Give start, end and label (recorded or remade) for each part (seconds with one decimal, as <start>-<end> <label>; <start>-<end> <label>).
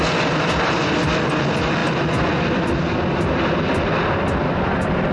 0.0-5.1 recorded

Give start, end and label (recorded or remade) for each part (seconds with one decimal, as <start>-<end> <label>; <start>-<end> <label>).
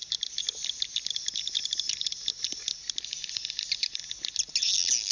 0.0-5.1 recorded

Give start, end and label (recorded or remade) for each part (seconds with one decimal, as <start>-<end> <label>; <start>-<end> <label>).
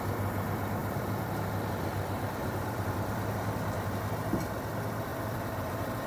0.0-0.8 recorded; 0.8-3.9 remade; 3.9-5.1 recorded; 5.1-6.1 remade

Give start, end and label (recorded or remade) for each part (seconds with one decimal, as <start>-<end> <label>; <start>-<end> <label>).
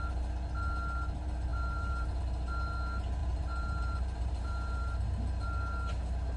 0.0-1.5 recorded; 1.5-2.2 remade; 2.2-3.2 recorded; 3.2-6.4 remade